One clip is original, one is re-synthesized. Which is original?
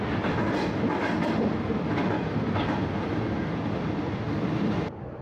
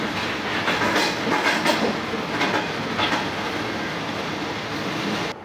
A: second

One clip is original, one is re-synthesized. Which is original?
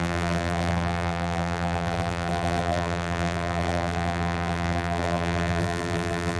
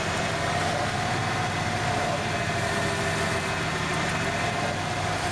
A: second